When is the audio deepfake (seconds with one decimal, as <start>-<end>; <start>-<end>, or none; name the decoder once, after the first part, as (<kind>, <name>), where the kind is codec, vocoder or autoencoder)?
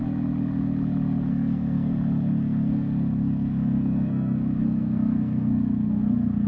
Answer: 1.3-1.9 (codec, SNAC); 2.3-6.5